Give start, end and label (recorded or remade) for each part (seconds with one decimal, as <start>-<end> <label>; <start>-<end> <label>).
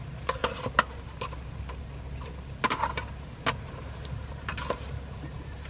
0.0-0.4 remade; 0.4-3.7 recorded; 3.7-5.7 remade